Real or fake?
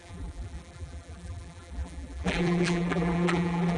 fake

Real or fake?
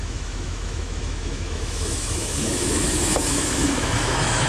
fake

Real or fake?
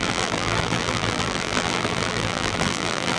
fake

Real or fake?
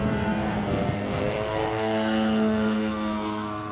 fake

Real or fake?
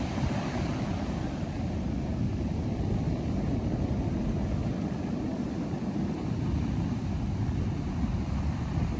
real